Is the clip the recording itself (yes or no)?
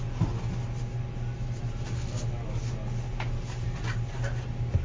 yes